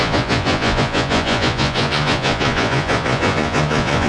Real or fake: fake